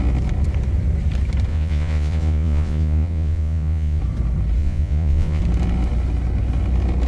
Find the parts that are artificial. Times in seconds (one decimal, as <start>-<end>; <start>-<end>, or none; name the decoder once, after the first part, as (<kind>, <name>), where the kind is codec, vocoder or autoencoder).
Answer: 1.5-4.0 (vocoder, Vocos); 4.6-5.4